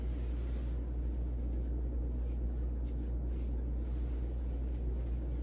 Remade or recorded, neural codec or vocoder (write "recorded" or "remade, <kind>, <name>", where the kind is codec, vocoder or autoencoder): recorded